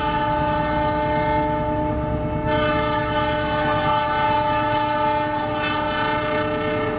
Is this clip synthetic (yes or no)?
no